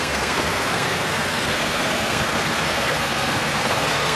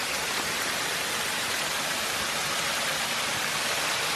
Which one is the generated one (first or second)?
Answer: first